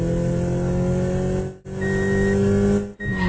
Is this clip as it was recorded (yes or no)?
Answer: yes